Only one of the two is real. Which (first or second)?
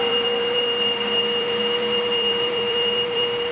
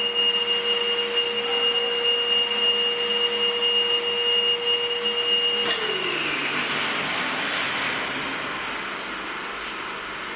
second